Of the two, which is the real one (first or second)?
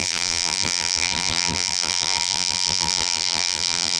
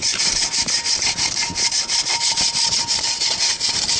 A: second